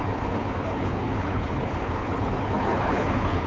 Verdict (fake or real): fake